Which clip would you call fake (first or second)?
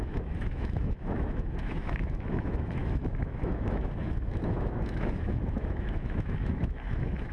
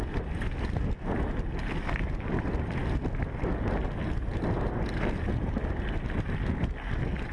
first